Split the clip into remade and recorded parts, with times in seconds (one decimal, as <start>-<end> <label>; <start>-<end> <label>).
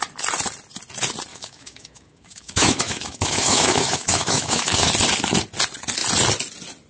0.0-1.3 recorded; 1.3-4.9 remade; 4.9-6.9 recorded